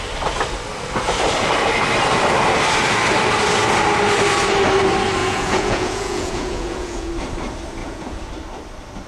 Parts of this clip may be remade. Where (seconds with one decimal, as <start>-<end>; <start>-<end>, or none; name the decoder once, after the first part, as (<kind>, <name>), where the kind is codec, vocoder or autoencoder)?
5.2-7.1 (vocoder, Vocos); 7.8-8.3